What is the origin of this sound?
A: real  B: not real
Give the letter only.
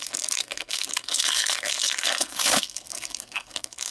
B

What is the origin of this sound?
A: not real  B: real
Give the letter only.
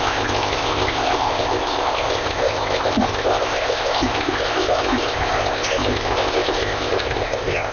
A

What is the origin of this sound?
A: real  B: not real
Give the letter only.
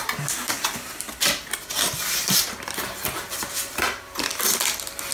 B